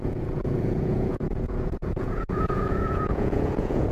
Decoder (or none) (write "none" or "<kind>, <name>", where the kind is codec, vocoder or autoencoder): vocoder, Vocos